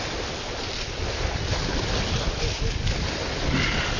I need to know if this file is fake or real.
real